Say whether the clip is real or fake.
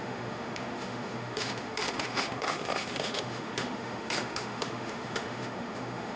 fake